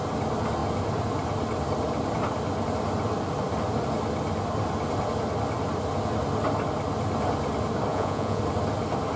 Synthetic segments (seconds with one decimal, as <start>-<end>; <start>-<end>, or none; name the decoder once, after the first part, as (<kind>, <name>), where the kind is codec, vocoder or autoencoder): 7.9-8.4 (vocoder, Vocos)